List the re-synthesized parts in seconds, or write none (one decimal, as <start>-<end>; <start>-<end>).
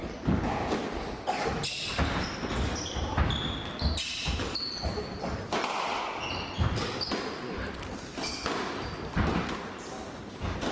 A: 4.4-6.0